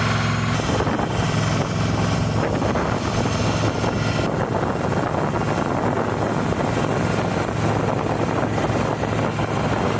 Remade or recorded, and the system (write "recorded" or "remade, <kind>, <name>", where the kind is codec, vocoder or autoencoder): recorded